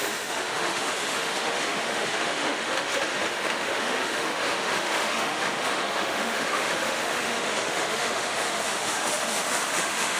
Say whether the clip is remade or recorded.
remade